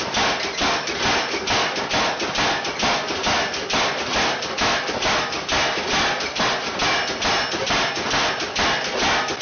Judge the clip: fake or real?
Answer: real